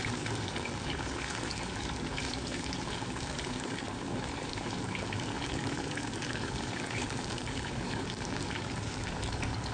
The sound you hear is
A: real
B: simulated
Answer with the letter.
B